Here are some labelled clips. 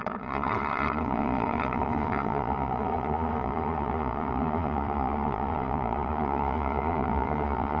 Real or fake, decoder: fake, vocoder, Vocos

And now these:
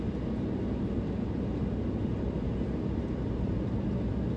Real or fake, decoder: real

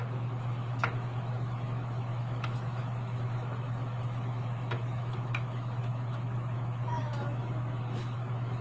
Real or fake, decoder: fake, autoencoder, DAC-VAE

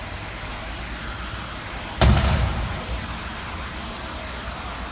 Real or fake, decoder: real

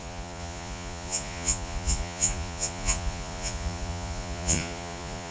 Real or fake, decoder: fake, vocoder, Vocos